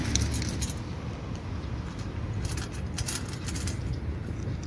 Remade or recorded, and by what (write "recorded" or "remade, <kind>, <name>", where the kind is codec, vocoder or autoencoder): recorded